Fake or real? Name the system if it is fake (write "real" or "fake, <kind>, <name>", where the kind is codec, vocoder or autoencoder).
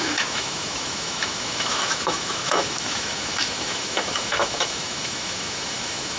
fake, autoencoder, DAC-VAE